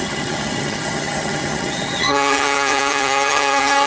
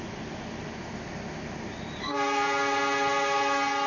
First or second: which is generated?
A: first